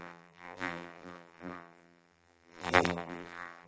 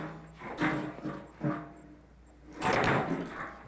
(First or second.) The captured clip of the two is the second